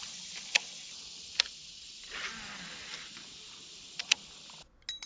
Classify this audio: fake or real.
real